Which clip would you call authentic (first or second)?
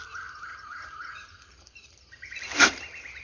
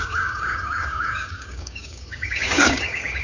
first